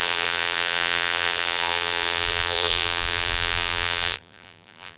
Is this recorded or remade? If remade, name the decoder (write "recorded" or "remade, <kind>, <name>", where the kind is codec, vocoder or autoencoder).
remade, vocoder, BigVGAN v2